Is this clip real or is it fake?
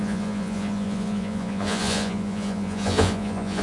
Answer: fake